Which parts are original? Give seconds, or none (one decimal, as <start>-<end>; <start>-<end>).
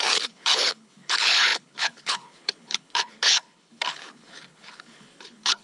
none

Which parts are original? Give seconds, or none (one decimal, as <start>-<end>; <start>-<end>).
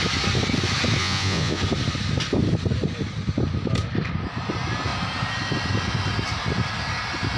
0.0-1.0; 1.6-7.4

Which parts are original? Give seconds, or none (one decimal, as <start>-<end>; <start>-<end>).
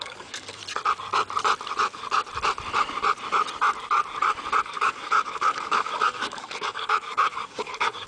0.6-4.6